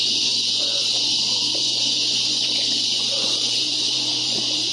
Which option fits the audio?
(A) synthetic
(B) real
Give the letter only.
A